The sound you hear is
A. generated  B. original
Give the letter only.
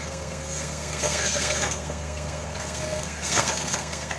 A